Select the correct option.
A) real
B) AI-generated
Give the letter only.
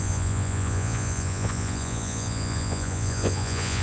B